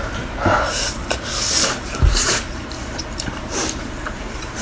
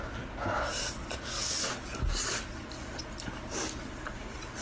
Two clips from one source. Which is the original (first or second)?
second